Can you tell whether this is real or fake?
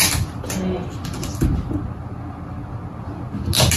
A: real